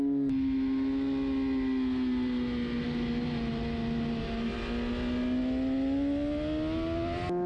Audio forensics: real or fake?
real